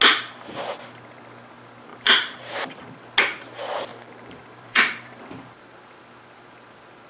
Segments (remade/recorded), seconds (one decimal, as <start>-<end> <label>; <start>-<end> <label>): 0.0-1.9 recorded; 1.9-2.8 remade; 2.8-3.9 recorded; 3.9-5.6 remade; 5.6-7.1 recorded